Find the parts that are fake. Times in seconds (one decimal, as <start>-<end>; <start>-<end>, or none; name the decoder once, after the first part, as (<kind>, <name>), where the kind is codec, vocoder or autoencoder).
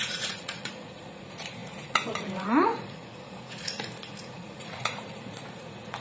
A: 0.0-6.0 (vocoder, Vocos)